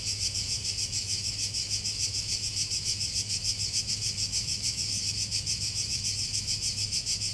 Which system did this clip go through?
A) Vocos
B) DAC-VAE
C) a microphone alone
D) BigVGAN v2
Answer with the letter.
B